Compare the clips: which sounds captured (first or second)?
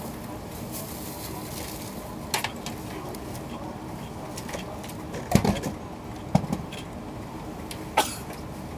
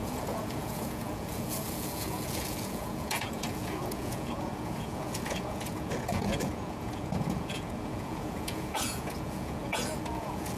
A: first